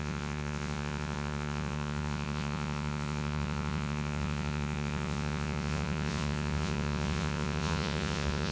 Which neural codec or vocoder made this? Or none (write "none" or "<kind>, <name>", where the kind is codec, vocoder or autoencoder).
vocoder, Vocos